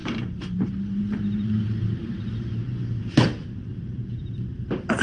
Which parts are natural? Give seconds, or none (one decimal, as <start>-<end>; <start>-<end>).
3.0-3.7; 4.4-5.0